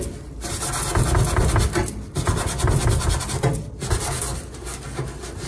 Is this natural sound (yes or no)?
yes